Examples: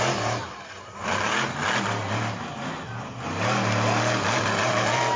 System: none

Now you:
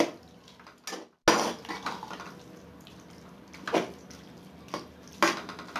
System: none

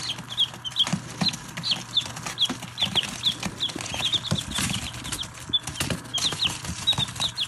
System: none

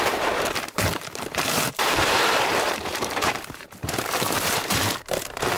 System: vocoder, BigVGAN v2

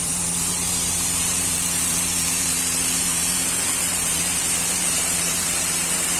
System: vocoder, BigVGAN v2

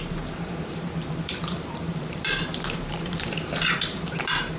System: vocoder, BigVGAN v2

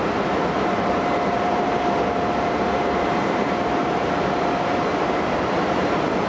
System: vocoder, BigVGAN v2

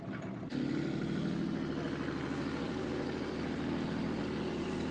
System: vocoder, BigVGAN v2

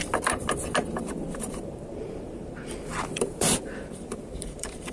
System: vocoder, BigVGAN v2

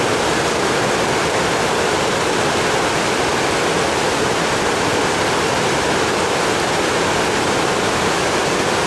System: none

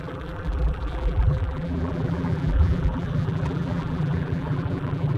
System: vocoder, BigVGAN v2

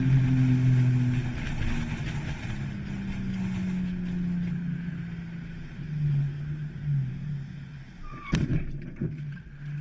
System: none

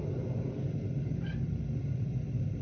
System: none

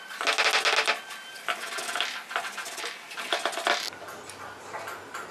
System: none